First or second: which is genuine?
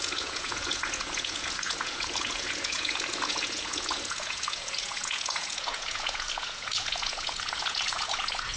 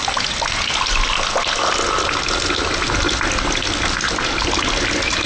second